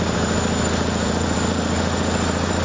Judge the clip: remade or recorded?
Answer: remade